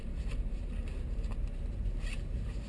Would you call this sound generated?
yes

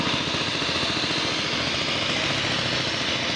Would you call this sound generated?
no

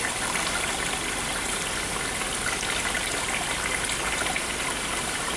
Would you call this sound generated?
no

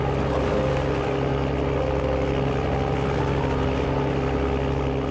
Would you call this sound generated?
no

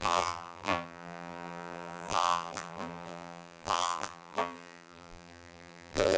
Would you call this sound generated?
yes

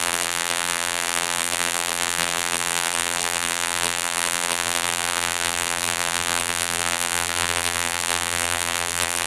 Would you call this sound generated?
yes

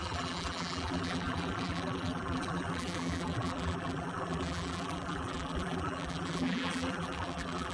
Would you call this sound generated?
yes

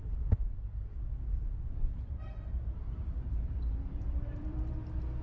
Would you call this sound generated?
yes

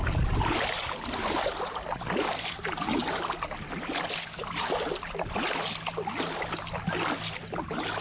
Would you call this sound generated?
no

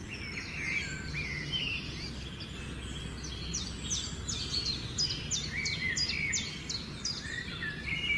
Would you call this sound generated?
no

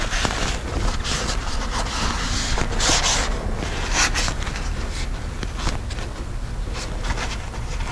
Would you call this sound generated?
no